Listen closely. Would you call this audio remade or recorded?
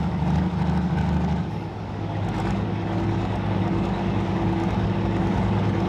remade